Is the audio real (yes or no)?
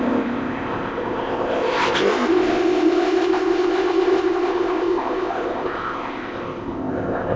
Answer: no